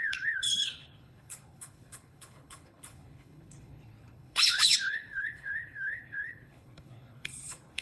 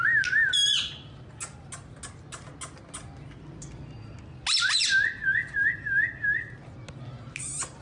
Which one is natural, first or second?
second